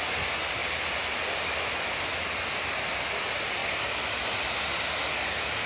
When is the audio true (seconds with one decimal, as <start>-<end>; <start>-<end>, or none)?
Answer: 0.0-5.7